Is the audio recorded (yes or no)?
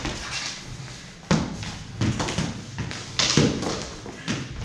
yes